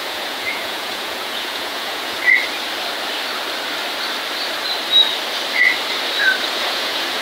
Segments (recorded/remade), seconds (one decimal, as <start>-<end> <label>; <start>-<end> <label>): 0.0-2.2 remade; 2.2-6.5 recorded; 6.5-7.2 remade